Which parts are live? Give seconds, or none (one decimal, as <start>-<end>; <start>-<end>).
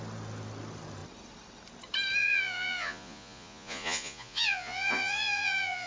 0.0-2.2